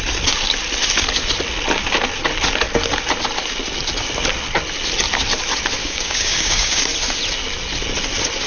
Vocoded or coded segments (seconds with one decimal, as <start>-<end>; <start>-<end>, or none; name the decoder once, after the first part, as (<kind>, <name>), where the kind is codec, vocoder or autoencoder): 5.8-6.8 (codec, DAC)